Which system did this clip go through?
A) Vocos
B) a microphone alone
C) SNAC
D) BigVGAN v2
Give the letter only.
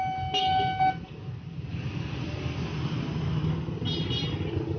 B